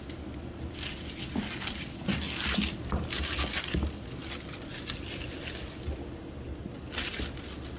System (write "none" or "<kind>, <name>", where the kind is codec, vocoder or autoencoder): none